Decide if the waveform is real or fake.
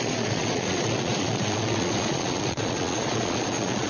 fake